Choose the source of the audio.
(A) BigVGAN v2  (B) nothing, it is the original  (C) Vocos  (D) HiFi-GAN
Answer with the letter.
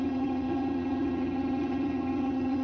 D